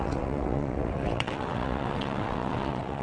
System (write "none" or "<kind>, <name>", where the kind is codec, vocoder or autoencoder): vocoder, WaveNeXt